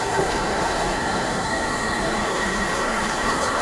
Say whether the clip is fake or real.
fake